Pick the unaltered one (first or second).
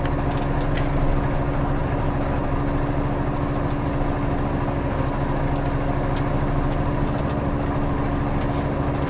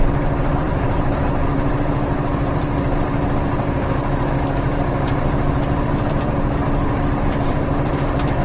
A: first